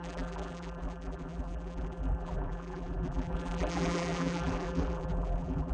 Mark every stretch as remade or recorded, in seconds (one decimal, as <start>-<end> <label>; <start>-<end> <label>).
0.0-5.7 remade